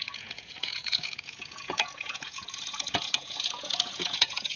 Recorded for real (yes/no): no